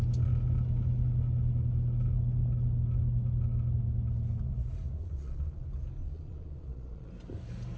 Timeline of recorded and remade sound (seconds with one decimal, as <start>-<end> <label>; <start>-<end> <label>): 0.0-5.0 recorded; 5.0-5.6 remade; 5.6-6.0 recorded; 6.0-7.1 remade; 7.1-7.8 recorded